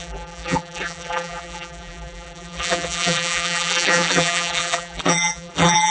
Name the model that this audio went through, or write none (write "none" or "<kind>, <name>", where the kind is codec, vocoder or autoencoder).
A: vocoder, BigVGAN v2